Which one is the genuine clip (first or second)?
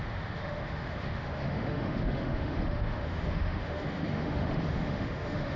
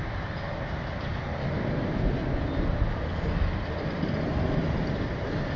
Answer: second